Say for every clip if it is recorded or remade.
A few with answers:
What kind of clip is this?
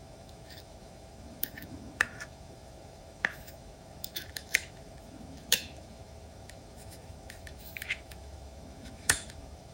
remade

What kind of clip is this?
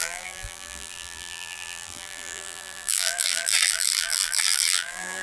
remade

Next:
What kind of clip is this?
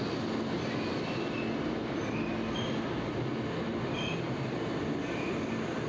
recorded